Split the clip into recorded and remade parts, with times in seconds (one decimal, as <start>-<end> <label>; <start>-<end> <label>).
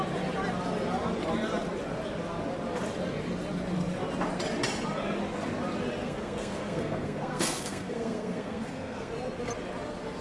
0.0-6.0 recorded; 6.0-9.1 remade; 9.1-10.2 recorded